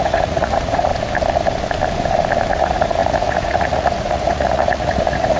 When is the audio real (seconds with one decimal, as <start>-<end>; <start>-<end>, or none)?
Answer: 0.9-2.5